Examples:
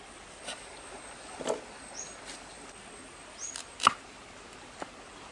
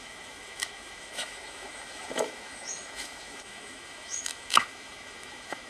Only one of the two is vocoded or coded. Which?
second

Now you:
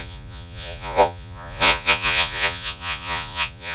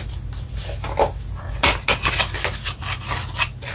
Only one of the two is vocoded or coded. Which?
first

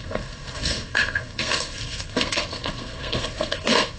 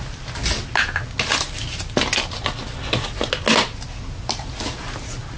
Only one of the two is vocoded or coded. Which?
first